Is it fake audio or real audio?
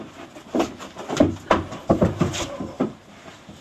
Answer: real